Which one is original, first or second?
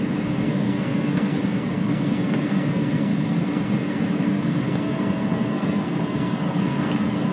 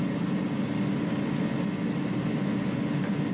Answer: second